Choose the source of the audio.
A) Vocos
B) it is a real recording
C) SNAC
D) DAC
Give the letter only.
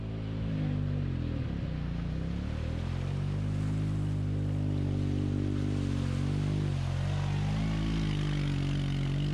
B